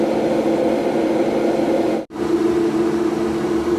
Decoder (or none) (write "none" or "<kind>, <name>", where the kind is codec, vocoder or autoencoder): none